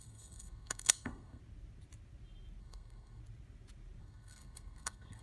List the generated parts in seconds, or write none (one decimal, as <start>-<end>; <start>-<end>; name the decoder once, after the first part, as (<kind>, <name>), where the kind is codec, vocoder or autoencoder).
0.0-1.4 (codec, SNAC); 2.6-3.2; 4.0-5.2

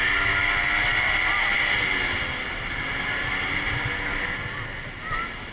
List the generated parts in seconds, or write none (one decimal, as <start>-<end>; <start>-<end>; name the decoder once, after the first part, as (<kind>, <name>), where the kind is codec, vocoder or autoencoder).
none

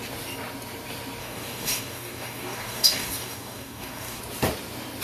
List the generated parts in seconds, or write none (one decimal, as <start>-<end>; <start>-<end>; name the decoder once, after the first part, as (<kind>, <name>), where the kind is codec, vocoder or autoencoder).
1.2-4.2 (codec, DAC)

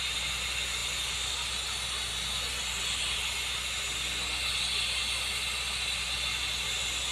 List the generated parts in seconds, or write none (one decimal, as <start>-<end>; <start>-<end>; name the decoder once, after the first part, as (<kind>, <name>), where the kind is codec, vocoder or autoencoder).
none

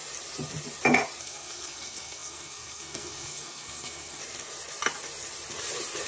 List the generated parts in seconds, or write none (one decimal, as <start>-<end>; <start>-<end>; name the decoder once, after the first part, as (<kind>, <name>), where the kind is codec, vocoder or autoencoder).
1.2-4.2 (codec, SNAC)